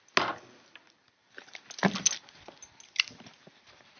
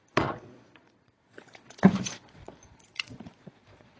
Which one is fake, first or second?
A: second